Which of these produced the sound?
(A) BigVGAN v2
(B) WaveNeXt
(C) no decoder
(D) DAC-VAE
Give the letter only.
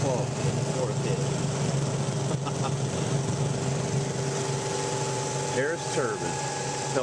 C